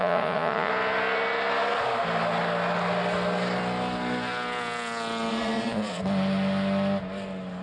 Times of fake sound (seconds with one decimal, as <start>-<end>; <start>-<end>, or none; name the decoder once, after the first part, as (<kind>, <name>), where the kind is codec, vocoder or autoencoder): 0.0-0.7 (vocoder, Vocos); 5.3-6.0